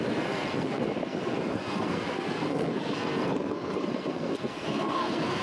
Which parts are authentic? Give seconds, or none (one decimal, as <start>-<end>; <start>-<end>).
none